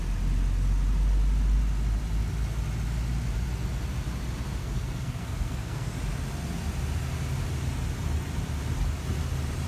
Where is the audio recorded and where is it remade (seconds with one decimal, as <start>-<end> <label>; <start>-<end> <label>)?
0.0-4.6 recorded; 4.6-5.9 remade; 5.9-9.7 recorded